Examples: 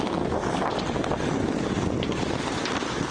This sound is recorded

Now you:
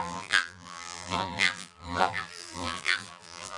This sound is remade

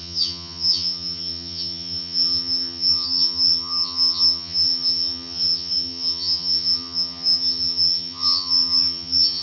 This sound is remade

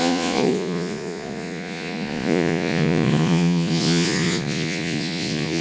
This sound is remade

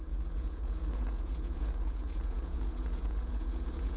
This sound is remade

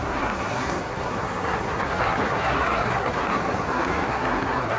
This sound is remade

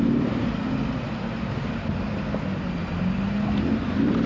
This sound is recorded